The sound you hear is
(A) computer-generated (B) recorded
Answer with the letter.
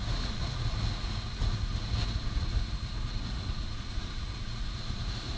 A